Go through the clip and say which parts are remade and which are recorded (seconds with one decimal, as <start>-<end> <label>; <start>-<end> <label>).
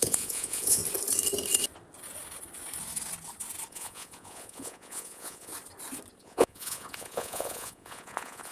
0.0-0.8 remade; 0.8-3.7 recorded; 3.7-5.5 remade; 5.5-6.2 recorded; 6.2-8.5 remade